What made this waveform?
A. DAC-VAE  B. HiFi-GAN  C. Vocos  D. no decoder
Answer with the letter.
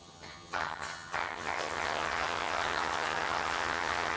B